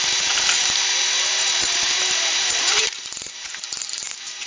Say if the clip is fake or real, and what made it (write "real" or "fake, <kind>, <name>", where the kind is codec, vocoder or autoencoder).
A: fake, vocoder, BigVGAN v2